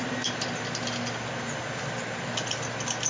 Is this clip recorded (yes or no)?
yes